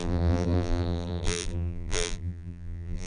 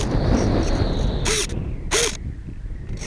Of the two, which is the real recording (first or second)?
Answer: second